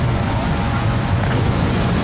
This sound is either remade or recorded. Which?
remade